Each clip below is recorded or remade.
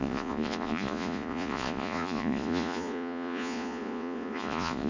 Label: remade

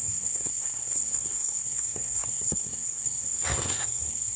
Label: remade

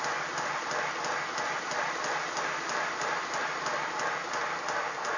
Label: recorded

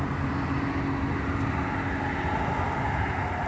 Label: recorded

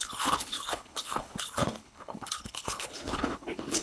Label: remade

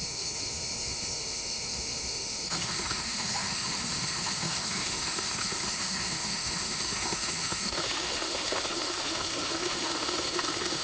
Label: remade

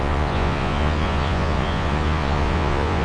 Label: remade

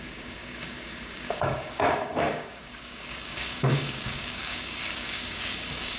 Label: remade